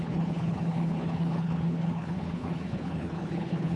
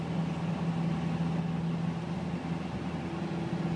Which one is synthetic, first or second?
first